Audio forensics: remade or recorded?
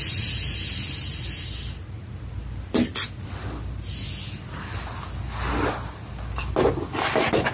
recorded